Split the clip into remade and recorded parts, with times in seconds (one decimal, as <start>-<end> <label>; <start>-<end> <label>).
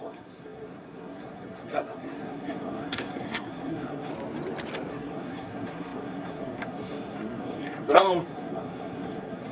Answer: 0.0-4.1 remade; 4.1-4.9 recorded; 4.9-9.5 remade